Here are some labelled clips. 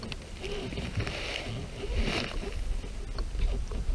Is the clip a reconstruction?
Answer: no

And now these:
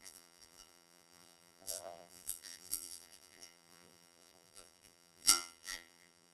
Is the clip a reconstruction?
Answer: yes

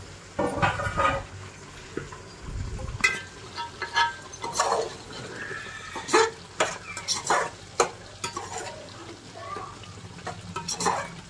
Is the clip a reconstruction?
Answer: no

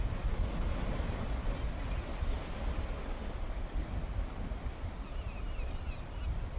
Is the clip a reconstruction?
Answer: no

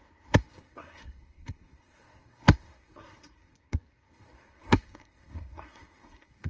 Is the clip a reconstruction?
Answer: yes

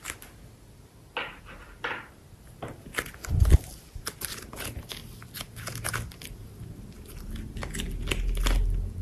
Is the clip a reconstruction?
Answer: no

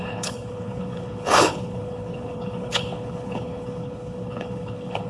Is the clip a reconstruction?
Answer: yes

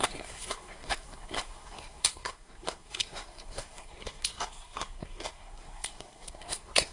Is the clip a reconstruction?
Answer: yes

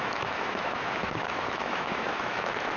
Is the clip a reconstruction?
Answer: yes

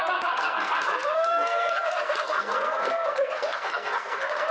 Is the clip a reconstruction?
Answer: yes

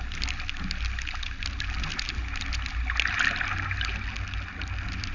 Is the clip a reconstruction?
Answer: no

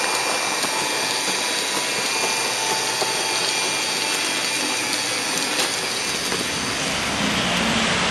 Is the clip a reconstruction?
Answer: no